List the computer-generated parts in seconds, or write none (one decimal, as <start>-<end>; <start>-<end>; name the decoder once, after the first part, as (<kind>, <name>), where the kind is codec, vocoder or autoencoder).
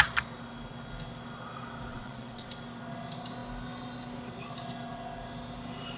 1.9-2.5 (vocoder, WaveNeXt)